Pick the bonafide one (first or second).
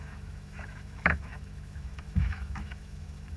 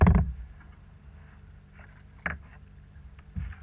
second